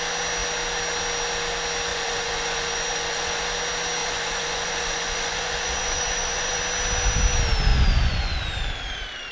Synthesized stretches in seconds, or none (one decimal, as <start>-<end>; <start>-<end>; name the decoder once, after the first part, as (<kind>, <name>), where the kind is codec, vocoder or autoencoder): 1.9-3.4 (vocoder, Vocos); 4.0-6.6; 7.7-8.4